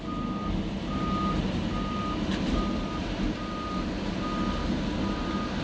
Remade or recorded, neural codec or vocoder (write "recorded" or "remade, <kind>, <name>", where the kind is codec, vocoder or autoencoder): recorded